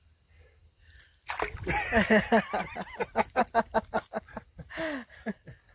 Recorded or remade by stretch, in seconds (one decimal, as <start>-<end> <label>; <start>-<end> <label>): 0.0-5.7 recorded